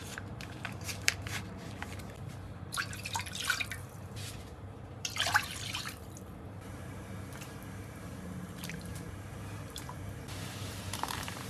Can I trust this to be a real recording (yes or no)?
no